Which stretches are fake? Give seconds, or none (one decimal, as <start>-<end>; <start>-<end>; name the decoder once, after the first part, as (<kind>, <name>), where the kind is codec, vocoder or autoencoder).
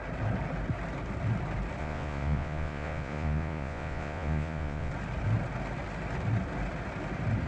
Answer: 1.8-4.9 (vocoder, Vocos)